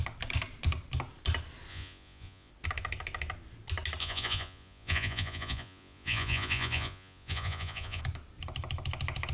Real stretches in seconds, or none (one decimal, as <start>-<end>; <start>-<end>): 0.0-1.7; 2.5-4.0; 8.0-9.3